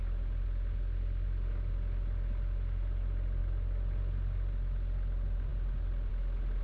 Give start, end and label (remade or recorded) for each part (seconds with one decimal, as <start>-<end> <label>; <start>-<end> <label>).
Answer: 0.0-6.6 recorded